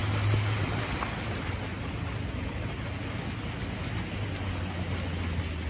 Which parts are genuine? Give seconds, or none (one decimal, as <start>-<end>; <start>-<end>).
0.0-5.7